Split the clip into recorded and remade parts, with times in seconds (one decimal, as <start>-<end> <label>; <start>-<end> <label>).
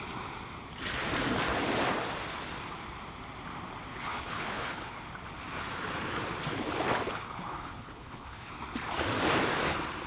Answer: 0.0-3.9 recorded; 3.9-5.0 remade; 5.0-7.1 recorded; 7.1-8.5 remade; 8.5-10.1 recorded